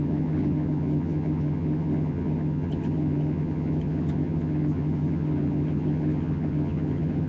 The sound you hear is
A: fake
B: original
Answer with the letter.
A